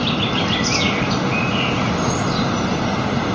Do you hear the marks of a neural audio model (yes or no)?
no